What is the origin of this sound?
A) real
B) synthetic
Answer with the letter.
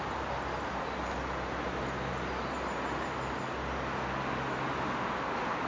A